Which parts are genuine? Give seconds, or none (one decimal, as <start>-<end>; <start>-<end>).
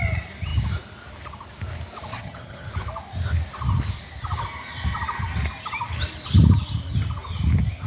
0.0-2.1; 2.7-7.9